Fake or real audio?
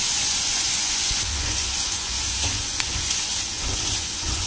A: fake